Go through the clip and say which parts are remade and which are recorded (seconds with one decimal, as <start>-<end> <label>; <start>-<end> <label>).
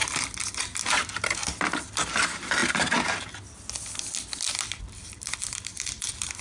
0.0-0.9 recorded; 0.9-2.6 remade; 2.6-4.8 recorded; 4.8-6.4 remade